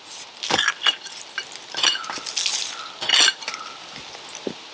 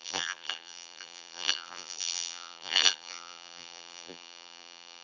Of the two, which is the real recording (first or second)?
first